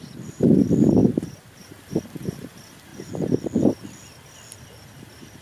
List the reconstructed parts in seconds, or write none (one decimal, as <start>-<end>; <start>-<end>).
0.0-1.0; 1.6-2.9; 4.6-5.4